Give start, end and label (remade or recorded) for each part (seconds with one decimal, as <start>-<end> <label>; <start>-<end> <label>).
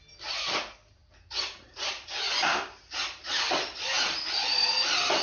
0.0-5.2 recorded